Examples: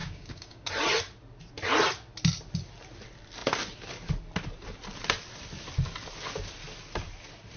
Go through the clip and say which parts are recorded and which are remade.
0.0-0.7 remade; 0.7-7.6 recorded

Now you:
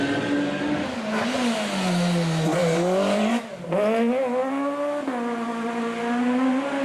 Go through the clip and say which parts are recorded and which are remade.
0.0-2.6 recorded; 2.6-3.3 remade; 3.3-6.8 recorded